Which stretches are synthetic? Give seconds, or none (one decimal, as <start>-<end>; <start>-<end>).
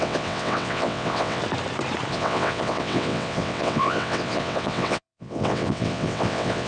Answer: 0.0-1.4; 2.1-6.7